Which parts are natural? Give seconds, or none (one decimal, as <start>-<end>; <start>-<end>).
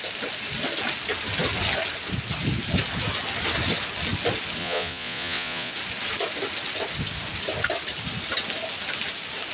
0.0-4.6; 5.7-9.5